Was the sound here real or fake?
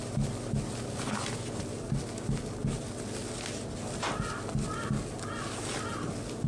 real